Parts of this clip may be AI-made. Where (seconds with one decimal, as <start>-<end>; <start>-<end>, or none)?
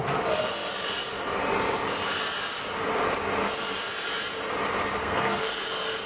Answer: 5.0-5.6